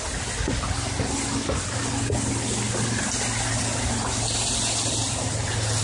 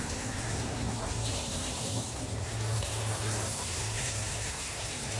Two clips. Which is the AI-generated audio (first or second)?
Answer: second